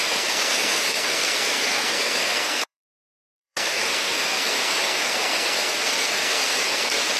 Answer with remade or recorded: remade